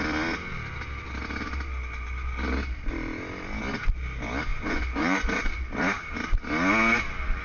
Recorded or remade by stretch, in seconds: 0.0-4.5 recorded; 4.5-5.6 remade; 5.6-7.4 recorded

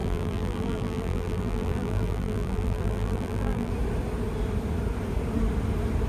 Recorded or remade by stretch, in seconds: 0.0-3.7 remade; 3.7-6.1 recorded

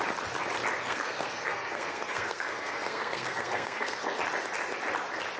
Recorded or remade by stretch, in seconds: 0.0-0.8 recorded; 0.8-4.0 remade; 4.0-5.4 recorded

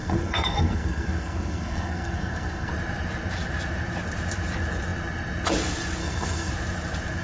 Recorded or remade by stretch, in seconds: 0.0-2.7 remade; 2.7-6.0 recorded; 6.0-6.5 remade; 6.5-7.2 recorded

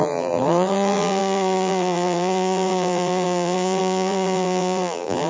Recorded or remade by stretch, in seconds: 0.0-5.3 remade

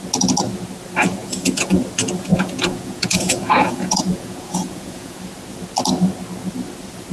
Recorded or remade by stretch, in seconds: 0.0-1.2 recorded; 1.2-1.8 remade; 1.8-2.3 recorded; 2.3-5.2 remade; 5.2-7.1 recorded

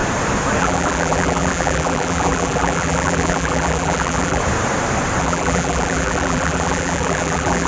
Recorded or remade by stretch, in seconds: 0.0-0.6 recorded; 0.6-4.4 remade; 4.4-5.2 recorded; 5.2-7.7 remade

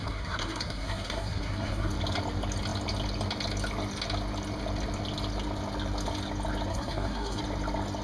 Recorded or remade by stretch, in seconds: 0.0-1.9 remade; 1.9-6.7 recorded; 6.7-7.4 remade; 7.4-8.0 recorded